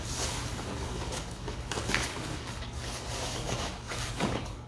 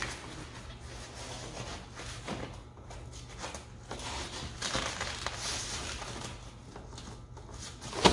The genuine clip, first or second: second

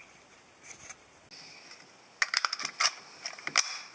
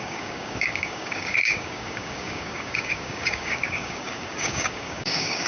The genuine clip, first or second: first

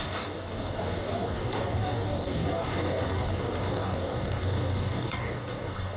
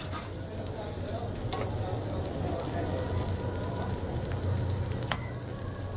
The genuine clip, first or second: second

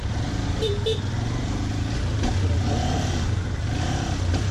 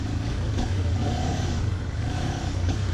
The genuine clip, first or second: first